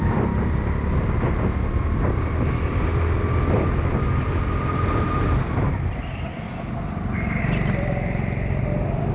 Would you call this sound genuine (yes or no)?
yes